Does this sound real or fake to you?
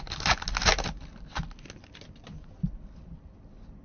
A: real